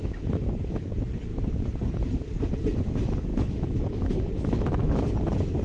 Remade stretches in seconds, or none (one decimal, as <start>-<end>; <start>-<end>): 0.0-0.9; 3.3-5.1